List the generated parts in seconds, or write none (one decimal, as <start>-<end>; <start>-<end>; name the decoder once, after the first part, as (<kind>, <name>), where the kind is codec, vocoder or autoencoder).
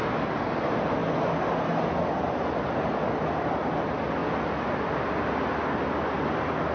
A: none